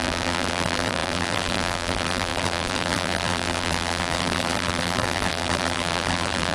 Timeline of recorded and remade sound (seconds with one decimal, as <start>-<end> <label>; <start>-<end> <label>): 0.0-6.5 remade